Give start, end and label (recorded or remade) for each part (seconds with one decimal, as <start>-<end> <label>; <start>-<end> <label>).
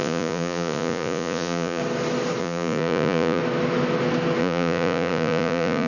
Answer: 0.0-1.8 remade; 1.8-2.4 recorded; 2.4-3.4 remade; 3.4-4.4 recorded; 4.4-5.9 remade